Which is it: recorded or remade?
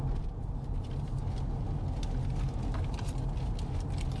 recorded